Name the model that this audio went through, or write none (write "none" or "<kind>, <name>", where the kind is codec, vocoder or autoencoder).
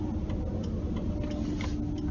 none